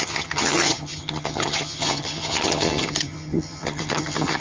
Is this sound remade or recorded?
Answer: remade